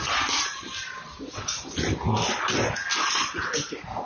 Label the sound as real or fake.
real